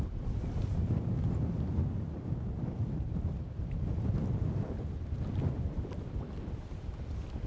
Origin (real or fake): real